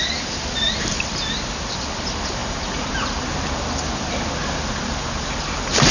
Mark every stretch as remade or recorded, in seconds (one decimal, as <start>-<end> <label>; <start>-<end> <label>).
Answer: 0.0-5.9 recorded

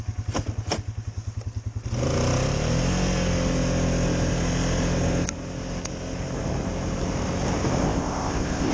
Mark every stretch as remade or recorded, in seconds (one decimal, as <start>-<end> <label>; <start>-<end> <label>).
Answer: 0.0-7.8 recorded; 7.8-8.7 remade

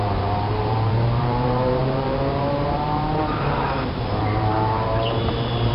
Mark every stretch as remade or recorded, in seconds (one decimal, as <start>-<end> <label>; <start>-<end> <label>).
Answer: 0.0-5.7 remade

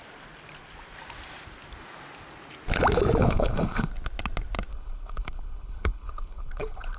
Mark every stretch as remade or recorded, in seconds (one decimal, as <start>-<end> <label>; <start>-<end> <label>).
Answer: 0.0-3.2 recorded; 3.2-3.9 remade; 3.9-4.7 recorded; 4.7-7.0 remade